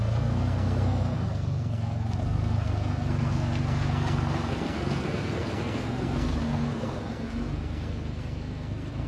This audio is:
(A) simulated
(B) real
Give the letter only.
A